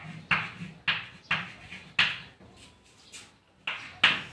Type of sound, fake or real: real